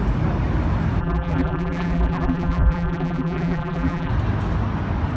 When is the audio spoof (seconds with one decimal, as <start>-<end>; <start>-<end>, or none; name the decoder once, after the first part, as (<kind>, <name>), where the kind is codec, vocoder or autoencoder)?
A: 1.0-4.1 (vocoder, BigVGAN v2)